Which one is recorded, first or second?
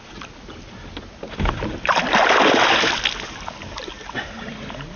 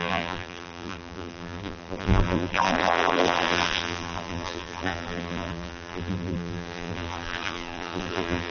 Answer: first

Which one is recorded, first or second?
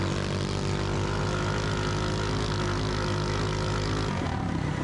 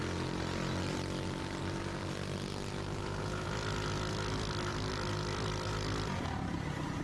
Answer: first